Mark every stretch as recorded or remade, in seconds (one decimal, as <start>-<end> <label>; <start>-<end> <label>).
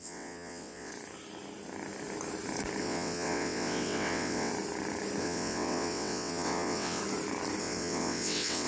0.0-0.9 remade; 0.9-2.8 recorded; 2.8-4.5 remade; 4.5-5.2 recorded; 5.2-7.0 remade; 7.0-7.6 recorded; 7.6-8.7 remade